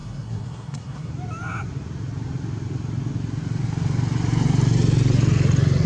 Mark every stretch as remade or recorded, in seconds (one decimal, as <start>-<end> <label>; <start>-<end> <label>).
0.0-1.1 remade; 1.1-5.9 recorded